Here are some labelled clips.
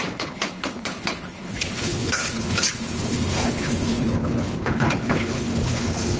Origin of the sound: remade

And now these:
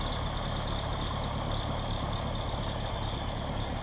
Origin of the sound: recorded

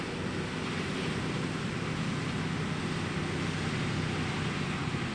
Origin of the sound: recorded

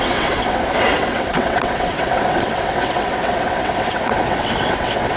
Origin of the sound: remade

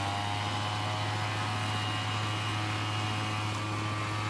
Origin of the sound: recorded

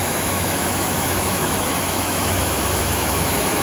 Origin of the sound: remade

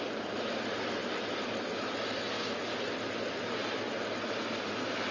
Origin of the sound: recorded